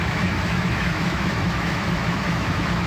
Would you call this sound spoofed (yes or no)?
yes